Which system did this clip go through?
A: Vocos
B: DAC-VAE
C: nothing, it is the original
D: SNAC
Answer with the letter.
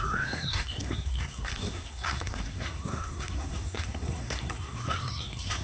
D